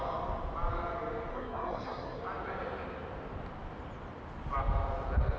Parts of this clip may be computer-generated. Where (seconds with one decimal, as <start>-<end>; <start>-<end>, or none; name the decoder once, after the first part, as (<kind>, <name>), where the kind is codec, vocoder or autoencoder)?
1.3-2.2 (codec, SNAC)